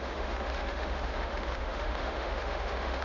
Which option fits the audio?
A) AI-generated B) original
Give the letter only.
A